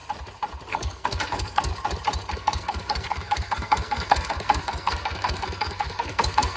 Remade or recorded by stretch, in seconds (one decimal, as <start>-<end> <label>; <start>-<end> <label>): 0.0-0.7 recorded; 0.7-1.7 remade; 1.7-2.3 recorded; 2.3-6.6 remade